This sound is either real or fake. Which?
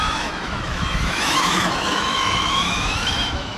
fake